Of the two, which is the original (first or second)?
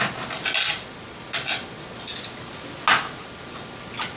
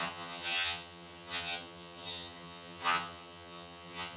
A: first